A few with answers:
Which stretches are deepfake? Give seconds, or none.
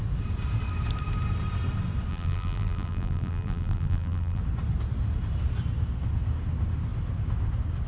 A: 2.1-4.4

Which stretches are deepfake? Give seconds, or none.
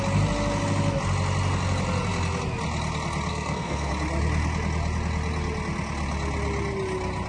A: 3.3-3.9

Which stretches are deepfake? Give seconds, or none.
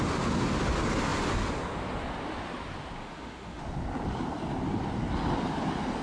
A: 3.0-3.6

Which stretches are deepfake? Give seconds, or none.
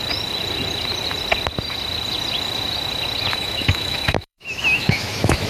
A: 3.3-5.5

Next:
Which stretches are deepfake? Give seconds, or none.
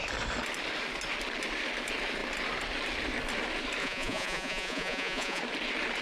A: 3.8-5.4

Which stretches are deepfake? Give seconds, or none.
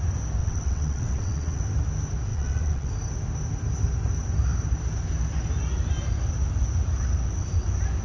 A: 0.4-1.6; 2.3-2.9